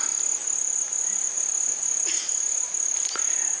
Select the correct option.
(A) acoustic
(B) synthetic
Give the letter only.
A